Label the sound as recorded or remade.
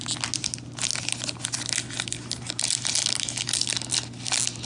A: recorded